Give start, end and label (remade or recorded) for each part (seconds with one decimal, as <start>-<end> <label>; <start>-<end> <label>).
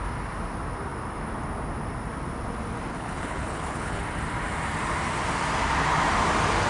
0.0-2.9 recorded; 2.9-4.0 remade; 4.0-6.7 recorded